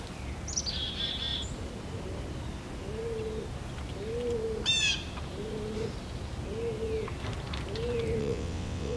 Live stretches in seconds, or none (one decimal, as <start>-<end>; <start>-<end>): 0.0-8.2